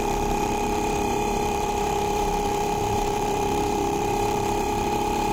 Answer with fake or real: fake